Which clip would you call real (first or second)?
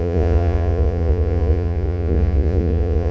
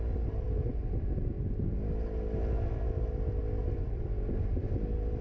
second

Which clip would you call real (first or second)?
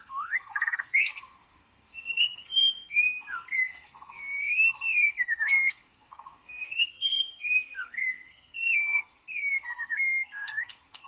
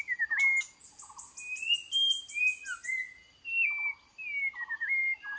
second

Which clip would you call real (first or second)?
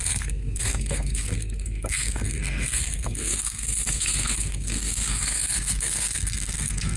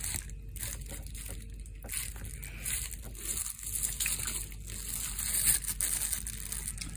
second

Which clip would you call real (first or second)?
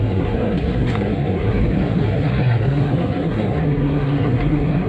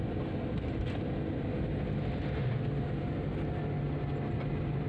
second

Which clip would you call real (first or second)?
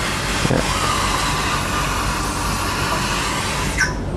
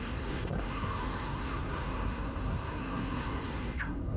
first